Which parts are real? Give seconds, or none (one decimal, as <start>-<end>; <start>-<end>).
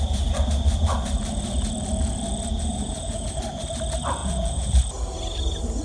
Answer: 0.0-2.5; 3.4-4.2; 4.7-5.8